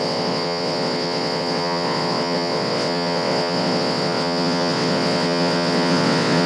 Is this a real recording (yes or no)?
no